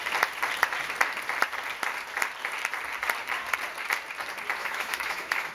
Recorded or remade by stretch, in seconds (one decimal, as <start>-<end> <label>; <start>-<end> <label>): 0.0-4.6 recorded; 4.6-5.5 remade